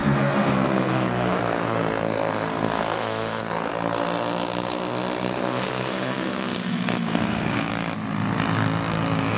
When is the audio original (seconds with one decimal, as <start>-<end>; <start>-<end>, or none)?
3.7-5.3; 7.7-9.4